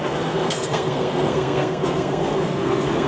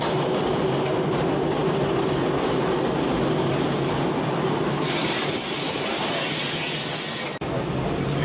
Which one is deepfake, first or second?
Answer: first